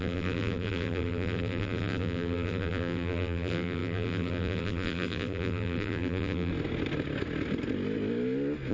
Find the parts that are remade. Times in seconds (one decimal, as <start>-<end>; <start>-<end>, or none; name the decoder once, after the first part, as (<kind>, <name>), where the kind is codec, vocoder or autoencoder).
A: 0.0-6.5 (vocoder, BigVGAN v2)